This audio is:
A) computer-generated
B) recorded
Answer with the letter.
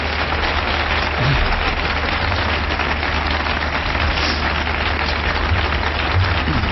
B